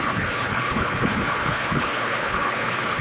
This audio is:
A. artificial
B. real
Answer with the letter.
A